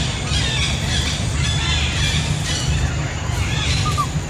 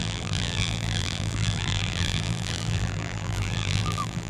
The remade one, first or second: second